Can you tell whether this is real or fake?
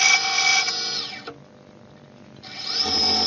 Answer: real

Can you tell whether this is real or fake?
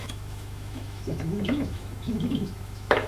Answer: fake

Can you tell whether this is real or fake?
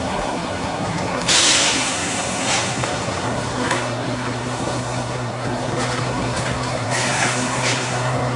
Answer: fake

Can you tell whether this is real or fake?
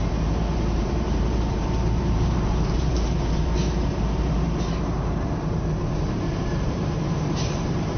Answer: fake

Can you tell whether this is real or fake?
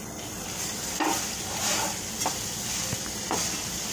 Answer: fake